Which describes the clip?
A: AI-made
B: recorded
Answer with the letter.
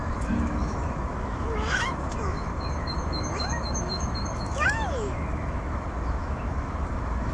A